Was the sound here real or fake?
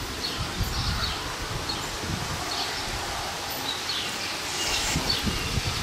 real